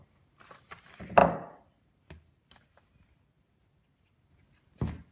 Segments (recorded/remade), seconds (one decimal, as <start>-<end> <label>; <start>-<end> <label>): 0.0-5.1 recorded